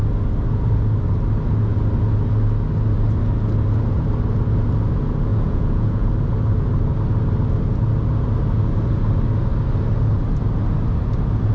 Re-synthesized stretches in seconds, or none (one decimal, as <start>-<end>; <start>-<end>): 5.3-6.1